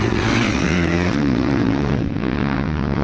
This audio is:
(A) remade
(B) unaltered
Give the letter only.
A